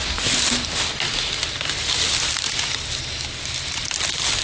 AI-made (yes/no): no